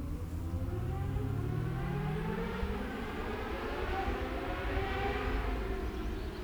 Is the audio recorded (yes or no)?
yes